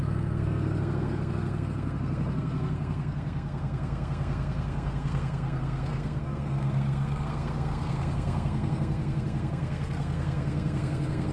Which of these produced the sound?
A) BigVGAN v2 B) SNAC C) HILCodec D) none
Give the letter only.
B